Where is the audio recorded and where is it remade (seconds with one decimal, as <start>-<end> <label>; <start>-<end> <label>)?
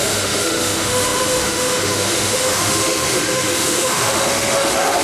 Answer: 0.0-5.0 remade